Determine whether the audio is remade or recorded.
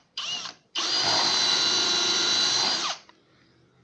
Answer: remade